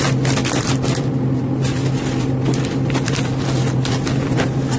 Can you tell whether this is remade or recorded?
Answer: recorded